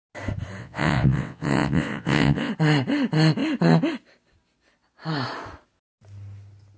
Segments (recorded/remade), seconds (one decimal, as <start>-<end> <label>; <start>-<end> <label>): 0.0-0.6 recorded; 0.6-2.5 remade; 2.5-6.8 recorded